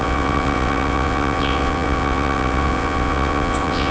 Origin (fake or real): fake